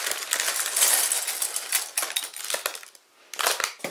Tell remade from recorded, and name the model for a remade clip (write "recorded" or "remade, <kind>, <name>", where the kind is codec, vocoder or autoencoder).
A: recorded